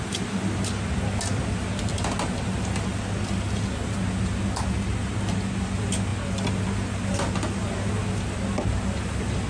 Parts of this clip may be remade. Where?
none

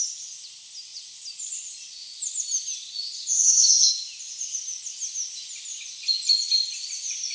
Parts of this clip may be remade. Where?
none

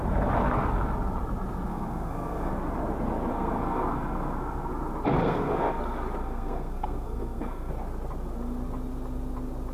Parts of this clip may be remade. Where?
1.7-2.5 (codec, SNAC); 3.3-4.7; 5.2-5.8; 6.2-7.7

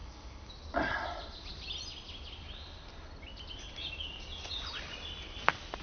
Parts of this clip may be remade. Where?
0.0-0.5 (codec, ZipCodec)

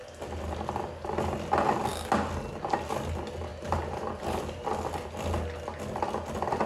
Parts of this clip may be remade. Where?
3.5-4.4 (vocoder, BigVGAN v2)

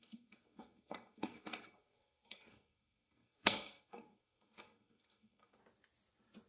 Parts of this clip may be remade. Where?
0.0-5.6 (codec, SNAC)

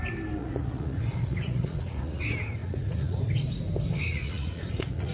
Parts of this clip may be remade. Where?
0.4-2.2 (vocoder, Vocos); 2.6-3.2; 4.1-5.1